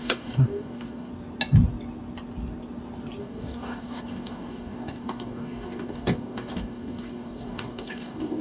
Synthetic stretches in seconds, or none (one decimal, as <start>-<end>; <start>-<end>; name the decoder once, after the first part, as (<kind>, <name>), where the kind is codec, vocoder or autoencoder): 0.0-1.1 (codec, DAC); 3.2-8.4